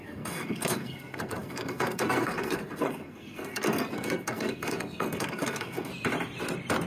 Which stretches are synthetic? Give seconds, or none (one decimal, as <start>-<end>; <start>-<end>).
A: 0.0-5.9